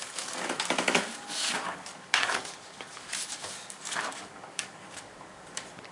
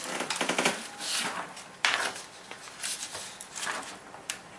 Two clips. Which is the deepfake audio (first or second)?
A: first